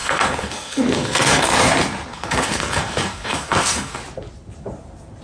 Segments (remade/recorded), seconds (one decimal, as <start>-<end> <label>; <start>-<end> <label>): 0.0-1.6 remade; 1.6-2.1 recorded; 2.1-4.0 remade; 4.0-5.2 recorded